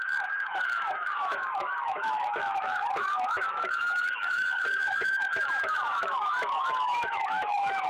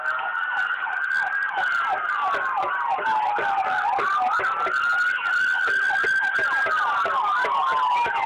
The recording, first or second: second